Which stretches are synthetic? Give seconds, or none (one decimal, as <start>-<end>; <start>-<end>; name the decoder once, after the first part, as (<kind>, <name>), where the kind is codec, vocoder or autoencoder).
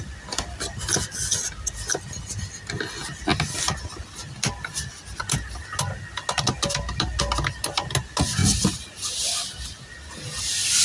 none